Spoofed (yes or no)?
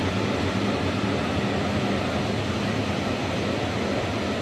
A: no